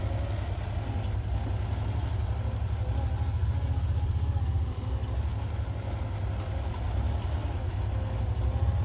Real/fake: real